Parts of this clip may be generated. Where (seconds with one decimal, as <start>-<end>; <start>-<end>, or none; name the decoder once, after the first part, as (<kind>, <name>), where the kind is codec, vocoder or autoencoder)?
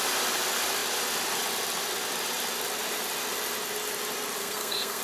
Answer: 4.4-5.0 (codec, SNAC)